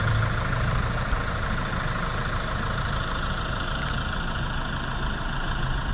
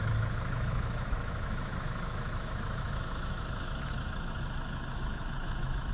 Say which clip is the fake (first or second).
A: second